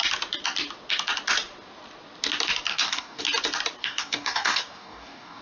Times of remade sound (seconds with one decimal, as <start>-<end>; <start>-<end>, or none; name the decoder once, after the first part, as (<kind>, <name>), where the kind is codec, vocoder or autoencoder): 2.7-3.2 (codec, DAC); 3.8-5.4